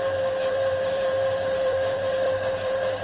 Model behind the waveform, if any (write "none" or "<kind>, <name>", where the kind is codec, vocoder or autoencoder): vocoder, BigVGAN v2